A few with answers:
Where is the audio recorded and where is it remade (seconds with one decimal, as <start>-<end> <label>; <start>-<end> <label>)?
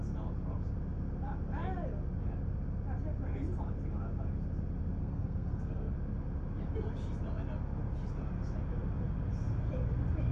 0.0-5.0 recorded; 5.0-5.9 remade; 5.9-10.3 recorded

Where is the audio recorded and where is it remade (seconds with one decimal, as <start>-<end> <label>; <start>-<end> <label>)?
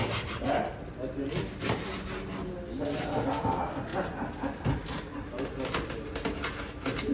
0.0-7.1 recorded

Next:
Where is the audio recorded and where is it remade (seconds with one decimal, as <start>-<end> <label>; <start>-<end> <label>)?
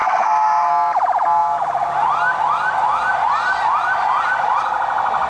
0.0-0.7 remade; 0.7-5.3 recorded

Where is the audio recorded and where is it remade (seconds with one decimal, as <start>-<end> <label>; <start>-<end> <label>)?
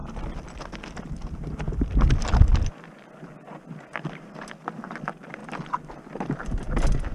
0.0-7.1 recorded